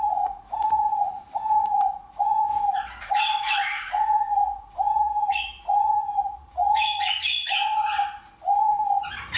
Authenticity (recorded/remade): remade